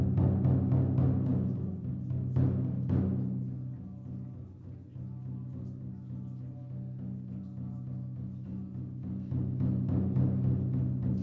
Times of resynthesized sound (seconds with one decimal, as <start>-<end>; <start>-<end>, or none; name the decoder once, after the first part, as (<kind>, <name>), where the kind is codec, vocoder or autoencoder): none